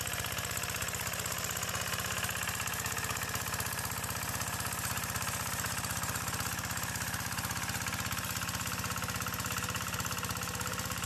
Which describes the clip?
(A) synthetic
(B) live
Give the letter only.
B